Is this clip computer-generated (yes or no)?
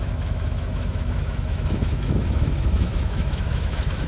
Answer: yes